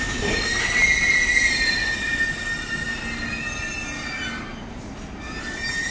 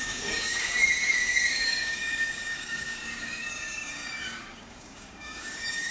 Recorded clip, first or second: first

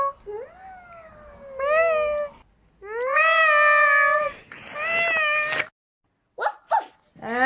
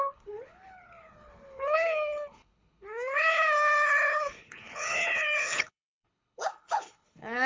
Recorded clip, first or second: first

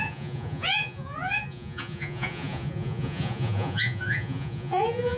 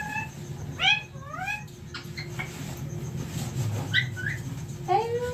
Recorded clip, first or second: second